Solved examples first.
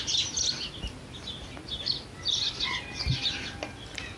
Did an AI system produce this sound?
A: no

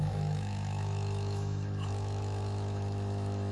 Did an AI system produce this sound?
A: yes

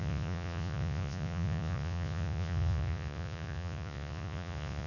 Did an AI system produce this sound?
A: yes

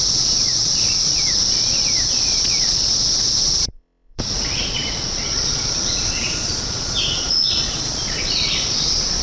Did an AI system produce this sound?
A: yes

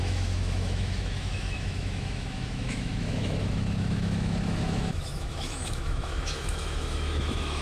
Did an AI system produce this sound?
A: yes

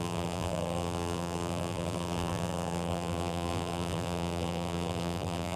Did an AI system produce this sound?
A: yes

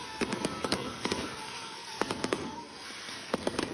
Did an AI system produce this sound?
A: yes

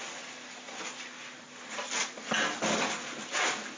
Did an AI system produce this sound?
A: no